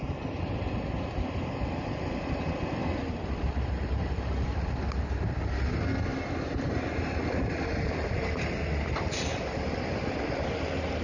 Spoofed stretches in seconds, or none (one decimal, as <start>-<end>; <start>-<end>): 0.0-2.3; 2.8-4.9; 6.1-10.6